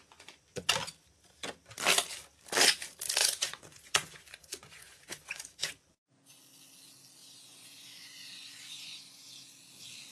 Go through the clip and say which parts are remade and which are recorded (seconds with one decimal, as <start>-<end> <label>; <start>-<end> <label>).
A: 0.0-0.7 remade; 0.7-3.2 recorded; 3.2-6.4 remade; 6.4-7.2 recorded; 7.2-9.3 remade; 9.3-10.1 recorded